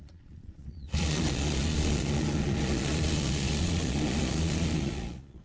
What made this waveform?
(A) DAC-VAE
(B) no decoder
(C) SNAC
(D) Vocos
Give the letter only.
D